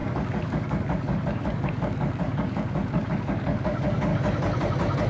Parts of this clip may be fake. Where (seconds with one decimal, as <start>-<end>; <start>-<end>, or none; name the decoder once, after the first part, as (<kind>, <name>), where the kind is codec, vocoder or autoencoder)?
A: 0.0-4.1 (codec, DAC)